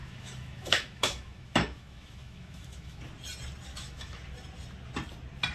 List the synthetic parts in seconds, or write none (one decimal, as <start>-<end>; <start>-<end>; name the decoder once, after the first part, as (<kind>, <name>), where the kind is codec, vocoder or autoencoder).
0.0-3.0 (autoencoder, DAC-VAE); 3.7-4.2